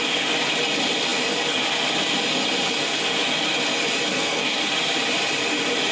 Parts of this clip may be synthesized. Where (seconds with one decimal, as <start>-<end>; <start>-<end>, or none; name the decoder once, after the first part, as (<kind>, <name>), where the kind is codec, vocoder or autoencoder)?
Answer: 4.1-4.6 (codec, SNAC)